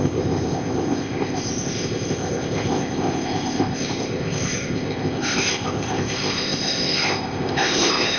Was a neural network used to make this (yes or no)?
yes